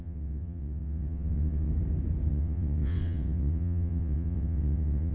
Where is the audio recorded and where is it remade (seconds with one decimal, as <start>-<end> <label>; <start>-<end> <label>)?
0.0-1.7 remade; 1.7-2.3 recorded; 2.3-5.1 remade